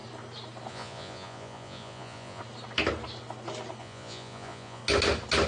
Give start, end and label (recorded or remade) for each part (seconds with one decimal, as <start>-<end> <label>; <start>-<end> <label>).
0.0-0.7 recorded; 0.7-2.4 remade; 2.4-3.8 recorded; 3.8-4.8 remade; 4.8-5.5 recorded